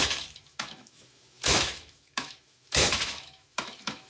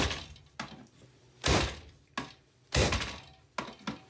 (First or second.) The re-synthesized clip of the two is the first